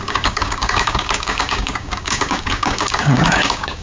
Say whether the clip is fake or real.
fake